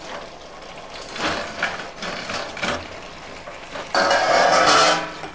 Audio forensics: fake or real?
real